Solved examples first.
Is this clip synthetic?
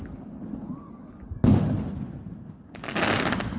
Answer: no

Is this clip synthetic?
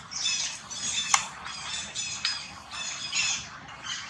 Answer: no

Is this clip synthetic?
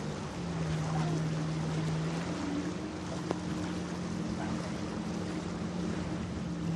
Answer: no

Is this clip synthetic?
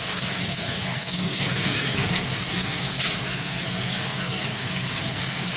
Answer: yes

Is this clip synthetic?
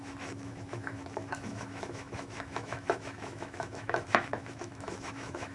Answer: yes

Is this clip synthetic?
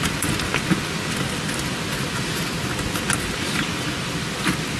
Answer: no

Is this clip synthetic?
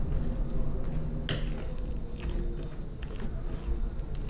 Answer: no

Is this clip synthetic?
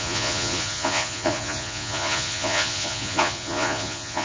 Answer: yes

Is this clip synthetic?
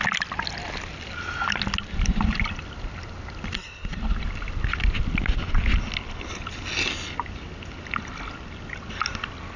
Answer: no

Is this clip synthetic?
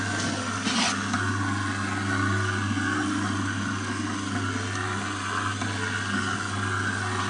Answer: no